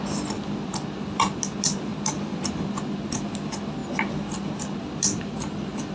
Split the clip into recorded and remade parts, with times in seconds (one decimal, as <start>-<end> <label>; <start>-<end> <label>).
0.0-5.9 recorded